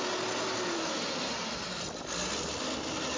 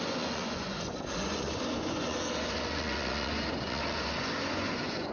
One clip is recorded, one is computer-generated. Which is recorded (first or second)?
first